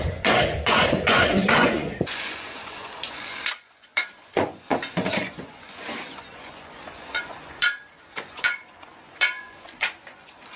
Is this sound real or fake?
fake